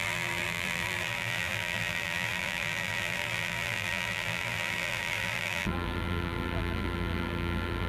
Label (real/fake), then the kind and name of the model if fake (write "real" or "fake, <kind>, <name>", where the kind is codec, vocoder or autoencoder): fake, vocoder, BigVGAN v2